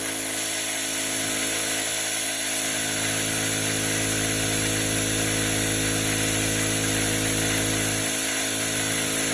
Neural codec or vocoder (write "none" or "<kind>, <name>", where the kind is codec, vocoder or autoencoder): none